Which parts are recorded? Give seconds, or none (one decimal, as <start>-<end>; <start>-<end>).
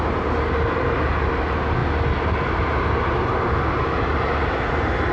0.0-5.1